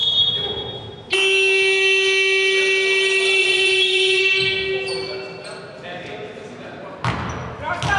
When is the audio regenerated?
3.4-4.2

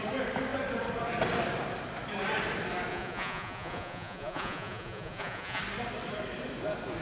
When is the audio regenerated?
2.9-5.6

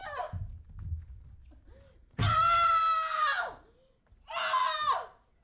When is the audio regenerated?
none

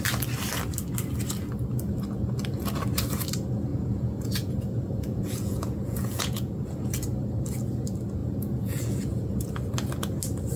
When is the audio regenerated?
3.7-6.7; 8.2-9.5

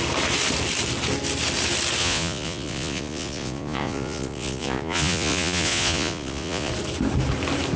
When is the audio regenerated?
2.0-6.7

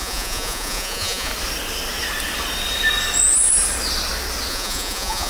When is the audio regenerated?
0.0-1.3; 4.5-5.3

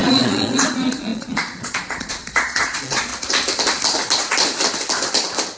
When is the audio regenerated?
0.0-3.1